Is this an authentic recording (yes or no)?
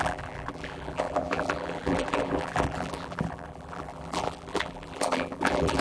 no